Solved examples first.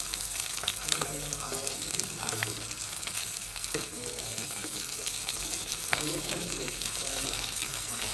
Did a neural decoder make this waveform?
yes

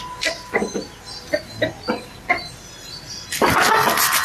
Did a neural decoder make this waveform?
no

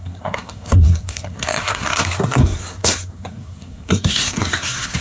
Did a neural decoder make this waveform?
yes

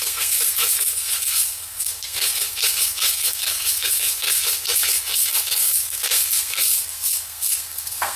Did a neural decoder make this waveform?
yes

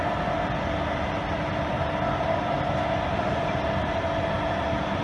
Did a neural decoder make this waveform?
no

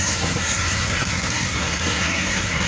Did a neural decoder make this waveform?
yes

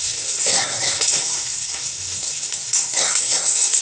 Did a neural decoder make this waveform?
yes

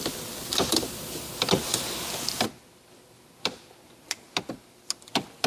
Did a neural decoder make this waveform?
no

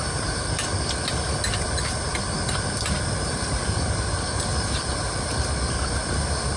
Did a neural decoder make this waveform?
no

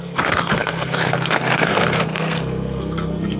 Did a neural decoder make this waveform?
yes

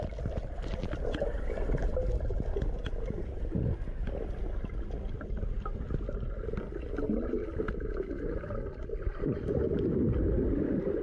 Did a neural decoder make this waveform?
no